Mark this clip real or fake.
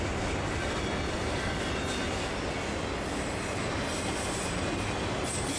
real